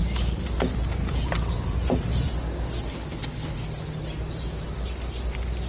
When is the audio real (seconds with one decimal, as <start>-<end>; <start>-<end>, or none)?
0.0-2.8; 3.6-5.7